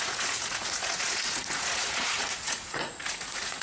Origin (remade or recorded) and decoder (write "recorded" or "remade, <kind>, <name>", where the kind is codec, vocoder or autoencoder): remade, vocoder, Vocos